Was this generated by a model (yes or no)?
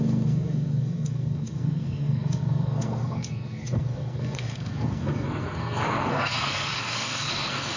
yes